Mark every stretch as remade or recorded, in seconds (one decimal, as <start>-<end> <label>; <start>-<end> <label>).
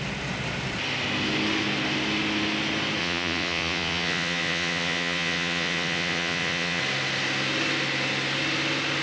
0.0-3.0 recorded; 3.0-6.8 remade; 6.8-9.0 recorded